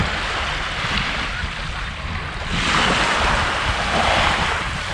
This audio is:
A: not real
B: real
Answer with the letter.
B